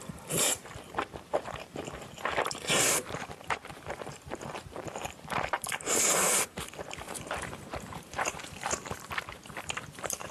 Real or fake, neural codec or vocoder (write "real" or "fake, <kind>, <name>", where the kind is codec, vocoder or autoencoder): fake, vocoder, BigVGAN v2